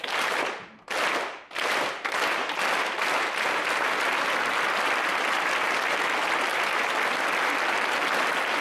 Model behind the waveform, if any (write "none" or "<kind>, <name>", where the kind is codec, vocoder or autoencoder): none